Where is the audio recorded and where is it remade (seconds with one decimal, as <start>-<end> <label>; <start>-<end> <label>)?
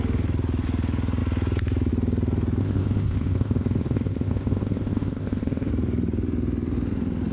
0.0-2.6 recorded; 2.6-5.7 remade; 5.7-7.3 recorded